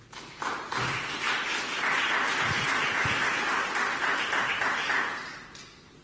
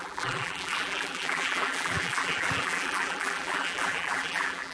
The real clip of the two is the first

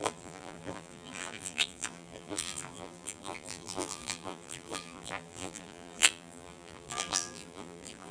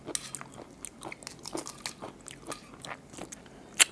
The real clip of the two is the second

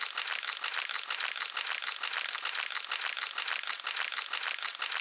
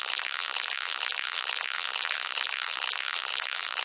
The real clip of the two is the first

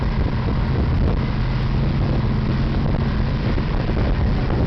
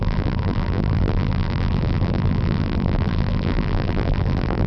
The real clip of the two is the first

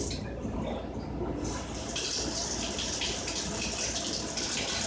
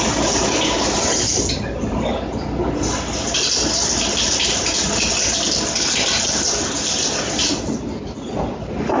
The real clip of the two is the second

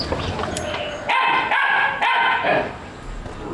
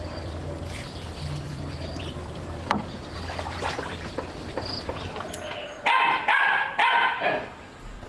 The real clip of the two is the first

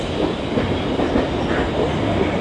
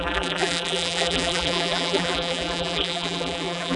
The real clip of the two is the first